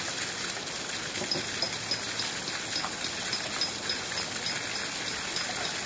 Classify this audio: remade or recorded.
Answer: recorded